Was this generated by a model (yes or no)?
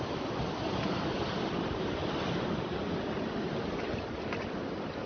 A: no